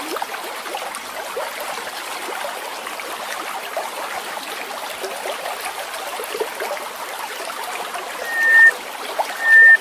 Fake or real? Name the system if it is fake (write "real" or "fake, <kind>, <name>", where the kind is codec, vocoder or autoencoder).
real